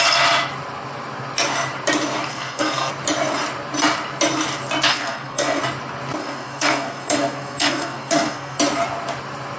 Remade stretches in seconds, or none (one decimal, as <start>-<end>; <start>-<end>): 2.3-2.9; 4.9-5.6; 6.2-8.6